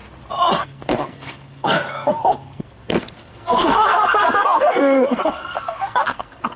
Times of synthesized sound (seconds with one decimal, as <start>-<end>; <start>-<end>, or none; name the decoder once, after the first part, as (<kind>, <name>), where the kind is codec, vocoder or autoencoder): 0.6-6.6 (codec, SNAC)